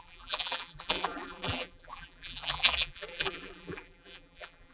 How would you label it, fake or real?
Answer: fake